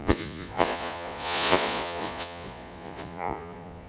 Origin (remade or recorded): remade